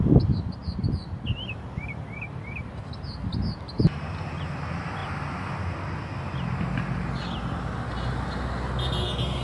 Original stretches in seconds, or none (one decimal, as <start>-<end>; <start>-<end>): 0.0-0.6; 2.8-9.4